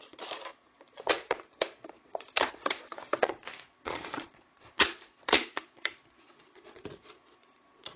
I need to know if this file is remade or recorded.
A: remade